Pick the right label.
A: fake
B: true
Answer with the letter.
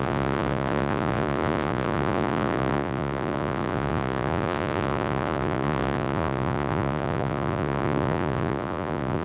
A